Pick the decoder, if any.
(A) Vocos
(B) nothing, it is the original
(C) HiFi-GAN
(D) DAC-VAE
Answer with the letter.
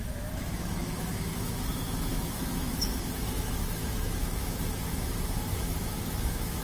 D